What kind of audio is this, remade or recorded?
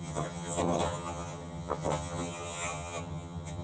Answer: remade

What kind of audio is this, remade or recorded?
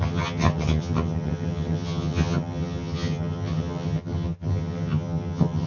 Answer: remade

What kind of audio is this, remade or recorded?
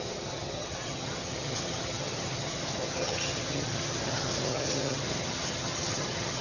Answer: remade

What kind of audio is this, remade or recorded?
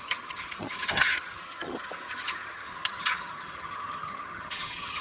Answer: remade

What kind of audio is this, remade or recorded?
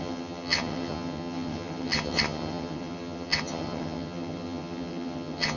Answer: remade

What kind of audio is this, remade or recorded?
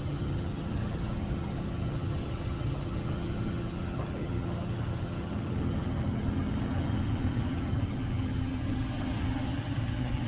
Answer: remade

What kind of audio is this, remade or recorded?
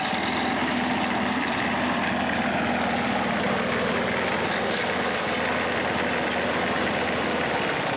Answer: recorded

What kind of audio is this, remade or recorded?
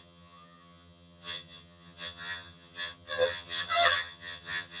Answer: remade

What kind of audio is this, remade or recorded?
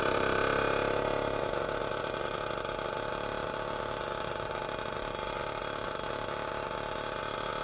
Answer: recorded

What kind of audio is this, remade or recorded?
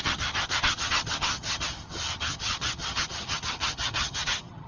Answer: remade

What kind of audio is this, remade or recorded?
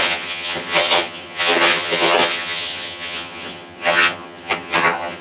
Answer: remade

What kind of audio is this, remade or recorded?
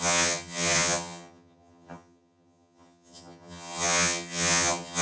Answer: remade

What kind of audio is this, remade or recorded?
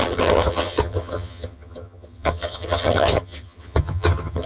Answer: remade